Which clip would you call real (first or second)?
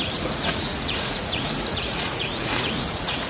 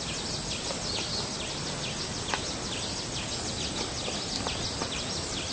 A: second